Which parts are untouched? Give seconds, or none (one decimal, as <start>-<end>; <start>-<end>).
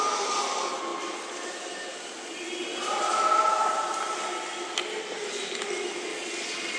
0.0-6.1